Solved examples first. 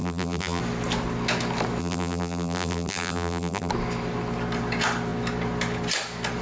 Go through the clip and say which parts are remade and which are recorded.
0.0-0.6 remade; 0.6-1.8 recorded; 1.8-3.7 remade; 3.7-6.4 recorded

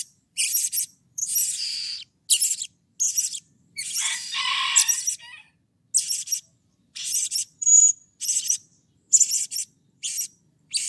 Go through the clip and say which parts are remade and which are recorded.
0.0-1.4 remade; 1.4-3.2 recorded; 3.2-4.8 remade; 4.8-6.5 recorded; 6.5-7.7 remade; 7.7-9.1 recorded; 9.1-10.9 remade

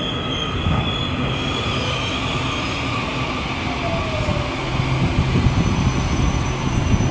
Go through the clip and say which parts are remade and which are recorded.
0.0-7.1 recorded

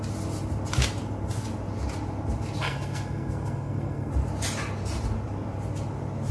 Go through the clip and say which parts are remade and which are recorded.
0.0-2.6 recorded; 2.6-4.1 remade; 4.1-6.3 recorded

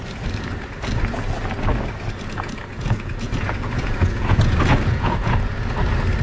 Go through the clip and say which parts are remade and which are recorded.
0.0-2.7 recorded; 2.7-5.5 remade; 5.5-6.2 recorded

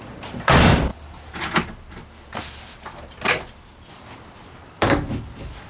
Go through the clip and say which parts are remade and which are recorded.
0.0-5.7 recorded